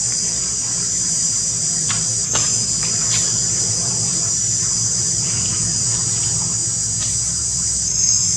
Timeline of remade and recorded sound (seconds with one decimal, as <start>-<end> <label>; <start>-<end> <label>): 0.0-6.6 remade; 6.6-7.2 recorded; 7.2-8.4 remade